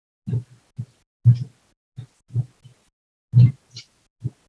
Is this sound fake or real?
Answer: real